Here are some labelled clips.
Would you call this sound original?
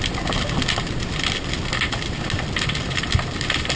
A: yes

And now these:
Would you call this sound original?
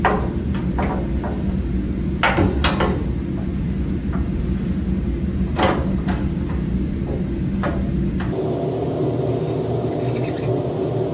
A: yes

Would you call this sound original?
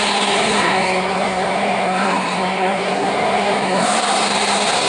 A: no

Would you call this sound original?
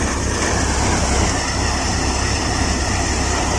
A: yes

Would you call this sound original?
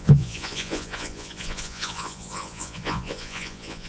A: no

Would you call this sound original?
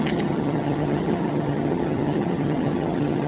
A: no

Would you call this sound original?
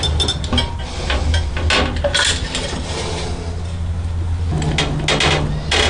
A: yes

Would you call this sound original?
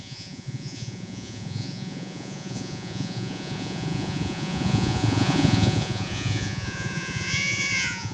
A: no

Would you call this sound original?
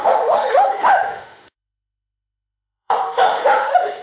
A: no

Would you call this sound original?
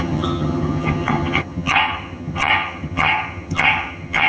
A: no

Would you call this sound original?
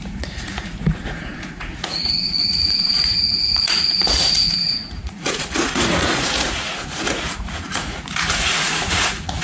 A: no